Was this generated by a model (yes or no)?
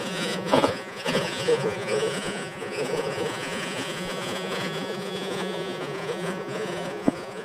yes